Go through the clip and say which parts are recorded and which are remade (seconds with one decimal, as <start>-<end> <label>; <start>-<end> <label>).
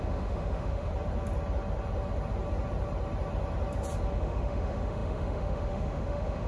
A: 0.0-0.9 remade; 0.9-4.1 recorded; 4.1-6.5 remade